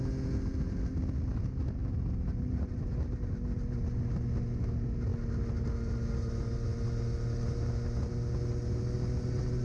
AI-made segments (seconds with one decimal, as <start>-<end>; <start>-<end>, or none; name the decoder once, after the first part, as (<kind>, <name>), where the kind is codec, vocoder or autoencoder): none